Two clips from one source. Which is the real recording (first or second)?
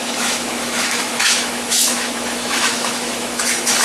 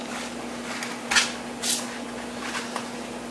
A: second